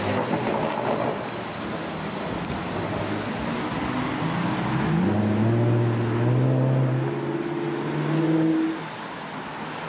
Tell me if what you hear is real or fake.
real